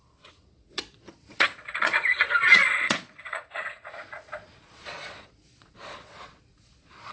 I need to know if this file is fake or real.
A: fake